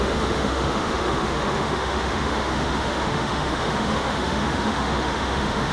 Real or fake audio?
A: fake